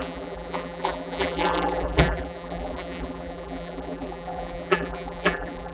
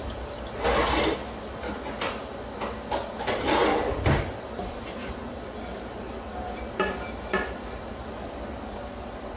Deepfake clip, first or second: first